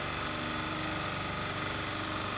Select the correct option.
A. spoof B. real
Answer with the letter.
B